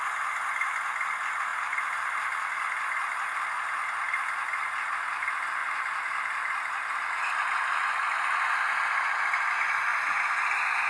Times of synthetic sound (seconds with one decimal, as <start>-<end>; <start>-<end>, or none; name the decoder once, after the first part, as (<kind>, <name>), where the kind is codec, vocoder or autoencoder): 5.6-7.3 (vocoder, BigVGAN v2); 9.9-10.9

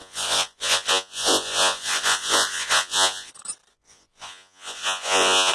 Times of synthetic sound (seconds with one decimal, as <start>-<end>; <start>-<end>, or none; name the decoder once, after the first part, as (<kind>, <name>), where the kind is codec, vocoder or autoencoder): 0.0-3.3 (vocoder, Vocos); 3.7-5.5

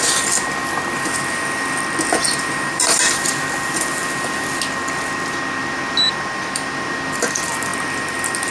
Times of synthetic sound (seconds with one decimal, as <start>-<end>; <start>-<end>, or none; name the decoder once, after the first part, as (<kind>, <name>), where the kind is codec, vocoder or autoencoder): 0.0-4.0 (vocoder, BigVGAN v2); 5.6-8.5